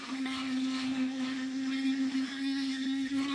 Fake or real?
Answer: fake